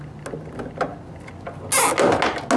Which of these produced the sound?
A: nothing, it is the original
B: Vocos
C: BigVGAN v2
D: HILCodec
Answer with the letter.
A